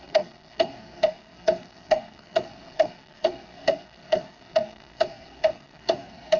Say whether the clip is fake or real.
fake